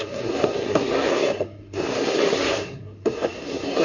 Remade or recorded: remade